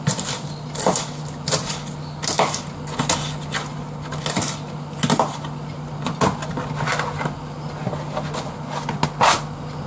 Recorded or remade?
recorded